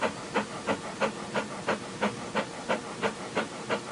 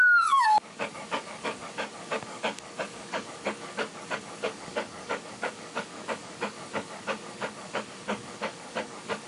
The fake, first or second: second